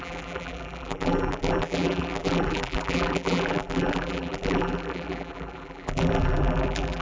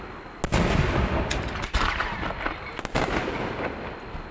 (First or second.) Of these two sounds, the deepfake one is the first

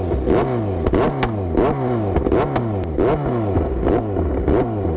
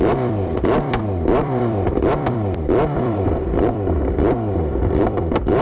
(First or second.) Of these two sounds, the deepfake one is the second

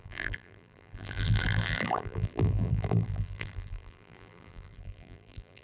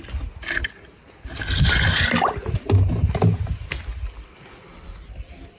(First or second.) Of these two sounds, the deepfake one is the first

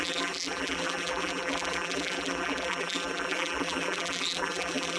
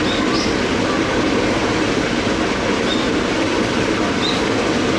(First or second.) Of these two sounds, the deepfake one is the first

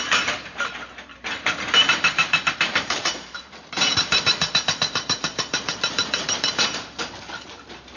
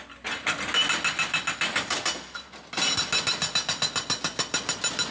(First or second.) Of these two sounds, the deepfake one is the first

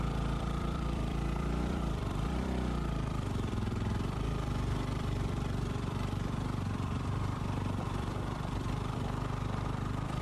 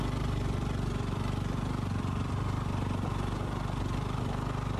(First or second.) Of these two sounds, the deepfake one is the first